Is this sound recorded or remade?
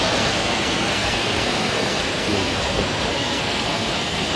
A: remade